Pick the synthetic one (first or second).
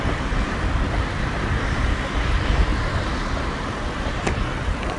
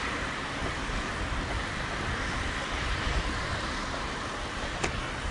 second